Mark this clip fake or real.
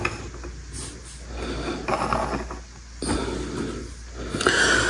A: real